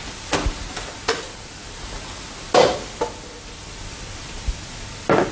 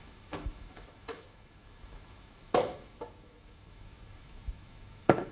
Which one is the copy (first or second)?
second